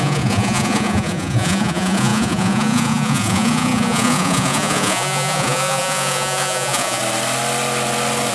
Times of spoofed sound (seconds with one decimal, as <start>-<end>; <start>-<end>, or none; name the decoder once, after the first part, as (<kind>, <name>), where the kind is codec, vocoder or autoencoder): 0.0-7.0 (vocoder, Vocos)